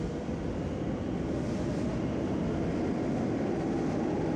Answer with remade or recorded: recorded